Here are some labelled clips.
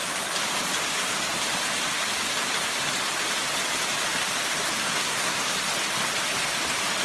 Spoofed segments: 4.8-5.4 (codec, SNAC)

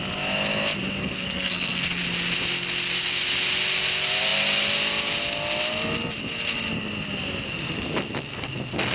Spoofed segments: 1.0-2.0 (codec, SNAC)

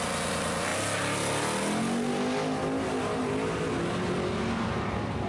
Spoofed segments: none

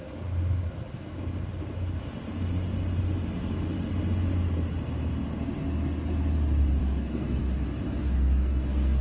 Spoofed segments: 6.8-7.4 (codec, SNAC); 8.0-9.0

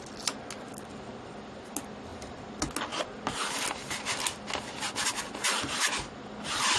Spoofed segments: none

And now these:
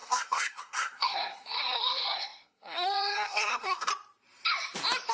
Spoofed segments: 0.0-3.9 (codec, SNAC)

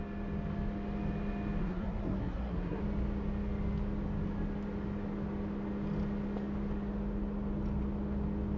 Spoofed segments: 1.6-2.8 (codec, SNAC)